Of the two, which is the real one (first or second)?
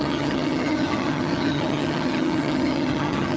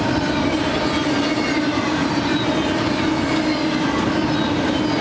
second